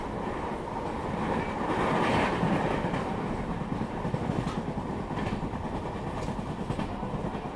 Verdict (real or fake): real